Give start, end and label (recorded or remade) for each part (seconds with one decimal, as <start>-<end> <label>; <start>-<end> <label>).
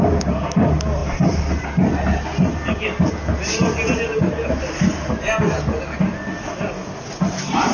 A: 0.0-7.7 recorded